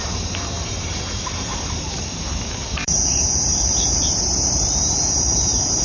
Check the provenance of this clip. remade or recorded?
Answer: remade